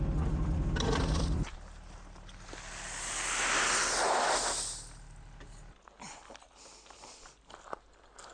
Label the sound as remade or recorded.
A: recorded